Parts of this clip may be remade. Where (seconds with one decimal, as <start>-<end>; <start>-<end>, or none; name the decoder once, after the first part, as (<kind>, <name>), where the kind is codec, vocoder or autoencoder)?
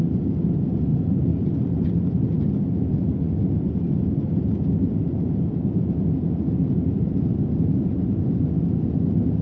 0.9-2.1 (vocoder, BigVGAN v2)